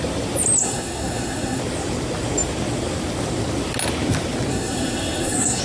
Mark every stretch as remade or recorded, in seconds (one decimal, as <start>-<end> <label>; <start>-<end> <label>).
0.0-0.6 recorded; 0.6-1.6 remade; 1.6-4.5 recorded; 4.5-5.6 remade